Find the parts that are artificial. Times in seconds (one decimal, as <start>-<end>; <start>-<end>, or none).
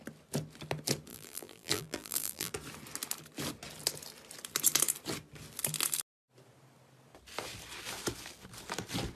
1.1-2.5